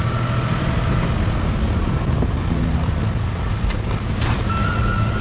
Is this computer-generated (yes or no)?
no